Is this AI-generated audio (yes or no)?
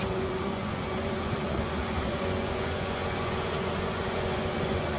yes